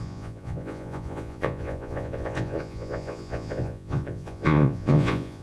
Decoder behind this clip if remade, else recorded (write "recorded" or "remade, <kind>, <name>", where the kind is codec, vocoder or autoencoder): remade, vocoder, Vocos